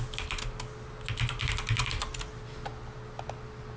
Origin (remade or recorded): recorded